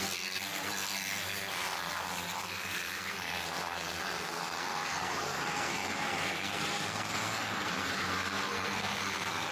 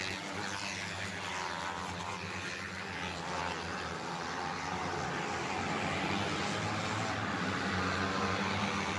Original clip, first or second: second